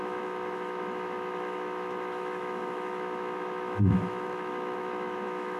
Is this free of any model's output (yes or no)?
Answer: no